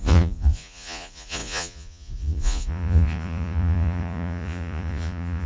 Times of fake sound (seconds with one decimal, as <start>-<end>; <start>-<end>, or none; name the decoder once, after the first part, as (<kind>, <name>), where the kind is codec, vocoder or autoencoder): 0.0-5.5 (vocoder, Vocos)